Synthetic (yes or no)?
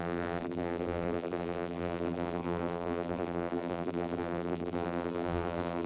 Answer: yes